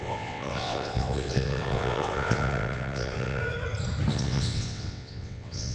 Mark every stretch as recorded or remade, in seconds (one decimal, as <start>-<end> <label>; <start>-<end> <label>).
0.0-3.4 remade; 3.4-4.1 recorded; 4.1-5.7 remade